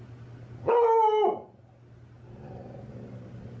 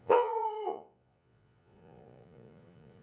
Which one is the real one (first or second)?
first